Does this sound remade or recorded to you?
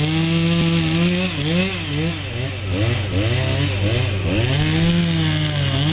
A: recorded